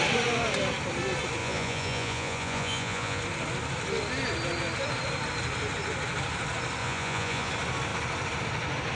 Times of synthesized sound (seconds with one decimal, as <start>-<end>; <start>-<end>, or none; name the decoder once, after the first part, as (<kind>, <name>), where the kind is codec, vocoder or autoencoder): 1.4-3.2 (vocoder, Vocos); 6.8-7.5